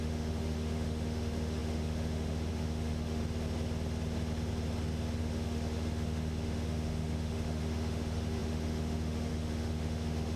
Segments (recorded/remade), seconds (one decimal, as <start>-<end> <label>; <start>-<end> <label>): 0.0-3.2 remade; 3.2-5.2 recorded; 5.2-10.4 remade